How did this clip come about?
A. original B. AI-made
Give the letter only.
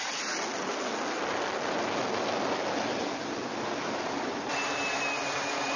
A